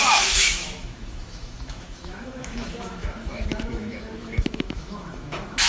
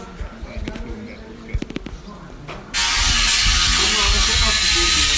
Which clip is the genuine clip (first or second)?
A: second